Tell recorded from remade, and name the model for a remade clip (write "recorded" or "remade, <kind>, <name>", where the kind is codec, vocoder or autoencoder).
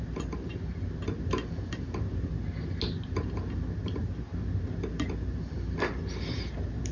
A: recorded